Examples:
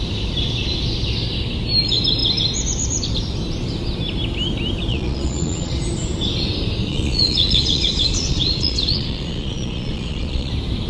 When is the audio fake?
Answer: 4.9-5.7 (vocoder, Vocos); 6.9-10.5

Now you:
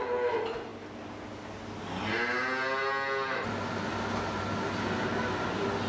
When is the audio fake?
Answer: none

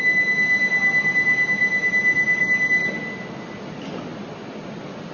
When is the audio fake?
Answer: none